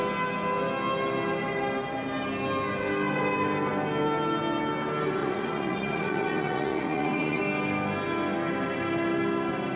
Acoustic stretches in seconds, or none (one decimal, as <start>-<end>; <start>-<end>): 0.0-5.2; 7.4-9.8